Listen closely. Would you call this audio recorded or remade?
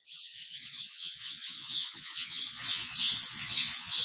remade